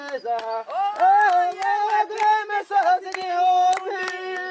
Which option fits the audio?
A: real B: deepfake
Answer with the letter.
A